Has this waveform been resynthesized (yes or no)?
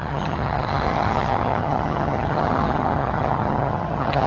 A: yes